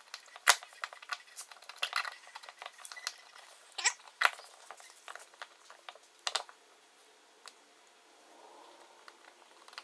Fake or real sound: real